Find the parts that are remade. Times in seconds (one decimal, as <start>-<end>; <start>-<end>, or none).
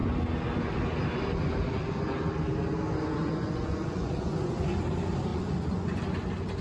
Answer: 3.2-4.8; 5.3-6.0